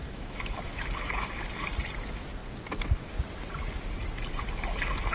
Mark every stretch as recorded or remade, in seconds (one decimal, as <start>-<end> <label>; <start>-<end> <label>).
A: 0.0-1.3 remade; 1.3-5.1 recorded